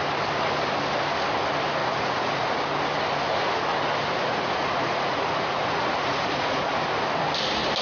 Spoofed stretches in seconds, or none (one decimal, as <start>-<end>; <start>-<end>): 1.8-2.6; 4.2-6.7